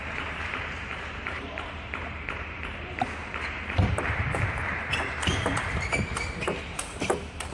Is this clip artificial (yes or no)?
yes